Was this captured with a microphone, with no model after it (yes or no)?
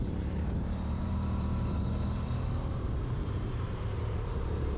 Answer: no